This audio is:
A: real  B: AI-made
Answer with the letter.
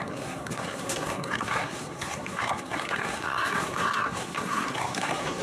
B